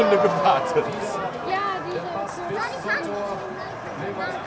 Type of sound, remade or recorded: recorded